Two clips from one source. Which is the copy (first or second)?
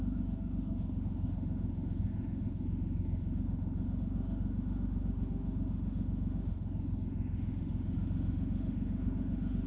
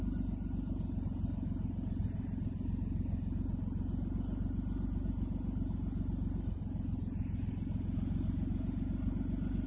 first